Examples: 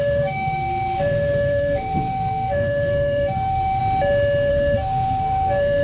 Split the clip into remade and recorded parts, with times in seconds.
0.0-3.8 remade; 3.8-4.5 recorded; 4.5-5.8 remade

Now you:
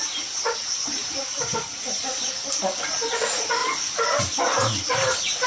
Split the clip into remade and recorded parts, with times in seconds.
0.0-5.5 recorded

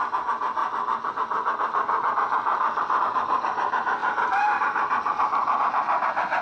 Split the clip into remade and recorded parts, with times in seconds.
0.0-0.6 remade; 0.6-3.0 recorded; 3.0-6.4 remade